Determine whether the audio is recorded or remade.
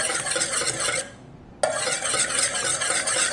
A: recorded